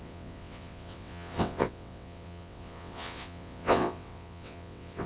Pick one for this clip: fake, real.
fake